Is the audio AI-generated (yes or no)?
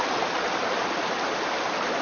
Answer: no